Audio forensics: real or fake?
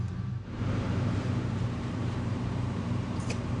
fake